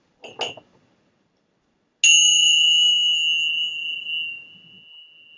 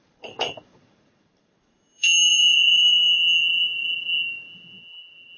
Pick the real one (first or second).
first